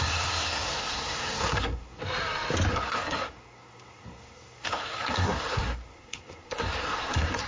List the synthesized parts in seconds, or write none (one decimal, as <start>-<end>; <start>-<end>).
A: 0.0-2.0; 2.7-7.5